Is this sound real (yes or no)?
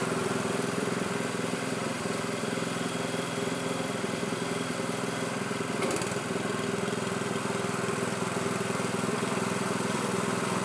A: no